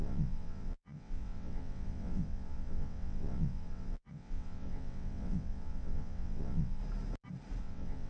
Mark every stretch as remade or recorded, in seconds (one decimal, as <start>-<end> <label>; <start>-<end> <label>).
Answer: 0.0-6.8 remade; 6.8-7.6 recorded; 7.6-8.1 remade